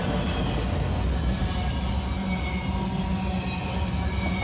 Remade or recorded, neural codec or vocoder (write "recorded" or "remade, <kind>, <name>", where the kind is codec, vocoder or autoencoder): recorded